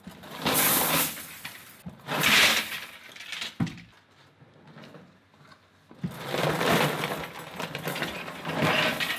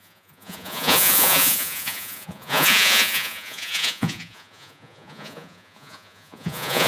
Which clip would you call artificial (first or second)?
second